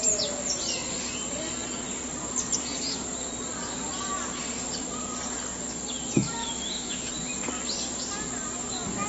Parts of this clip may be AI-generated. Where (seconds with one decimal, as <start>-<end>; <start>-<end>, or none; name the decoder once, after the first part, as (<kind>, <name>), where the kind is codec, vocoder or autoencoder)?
6.4-7.1 (autoencoder, DAC-VAE)